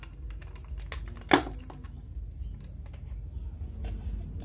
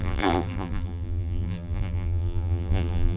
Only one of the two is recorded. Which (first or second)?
first